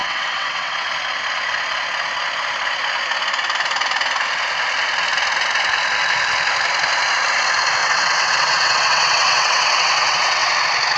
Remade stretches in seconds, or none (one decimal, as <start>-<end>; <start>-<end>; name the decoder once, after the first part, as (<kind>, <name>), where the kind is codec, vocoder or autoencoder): 0.0-0.9 (vocoder, WaveNeXt); 7.8-10.5